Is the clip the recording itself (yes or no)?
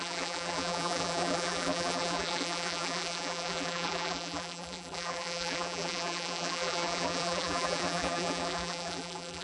no